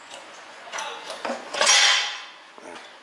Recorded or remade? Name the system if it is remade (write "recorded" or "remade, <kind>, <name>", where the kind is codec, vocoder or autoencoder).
remade, vocoder, Vocos